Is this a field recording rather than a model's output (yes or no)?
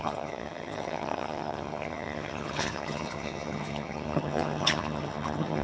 no